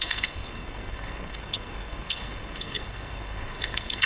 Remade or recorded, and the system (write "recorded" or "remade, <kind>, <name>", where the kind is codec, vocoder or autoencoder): remade, codec, SNAC